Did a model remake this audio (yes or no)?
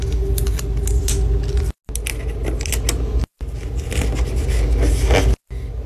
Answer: no